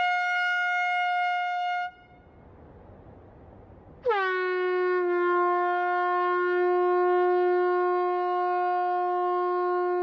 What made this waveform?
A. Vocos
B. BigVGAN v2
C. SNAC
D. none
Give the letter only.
D